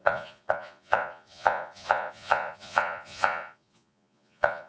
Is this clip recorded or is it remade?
remade